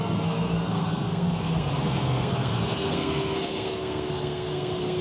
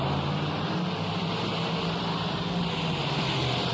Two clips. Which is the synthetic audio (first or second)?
first